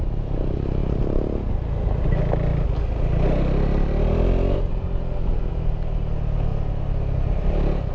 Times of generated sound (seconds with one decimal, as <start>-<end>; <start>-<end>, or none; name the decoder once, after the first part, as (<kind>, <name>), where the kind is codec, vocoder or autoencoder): none